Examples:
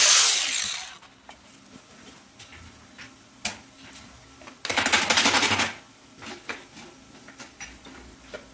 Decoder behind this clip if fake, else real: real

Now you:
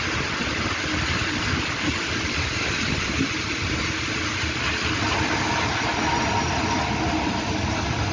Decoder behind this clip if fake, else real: real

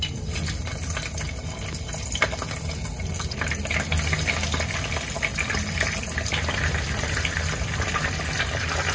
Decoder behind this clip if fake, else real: real